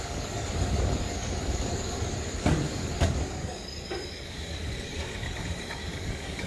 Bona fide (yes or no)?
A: no